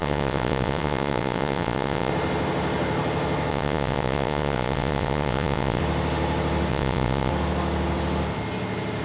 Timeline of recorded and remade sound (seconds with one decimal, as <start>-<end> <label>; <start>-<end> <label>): 0.0-2.1 remade; 2.1-3.5 recorded; 3.5-5.8 remade; 5.8-6.7 recorded; 6.7-7.3 remade; 7.3-9.0 recorded